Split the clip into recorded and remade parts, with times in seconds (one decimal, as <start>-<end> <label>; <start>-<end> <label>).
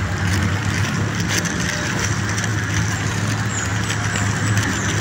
0.0-5.0 recorded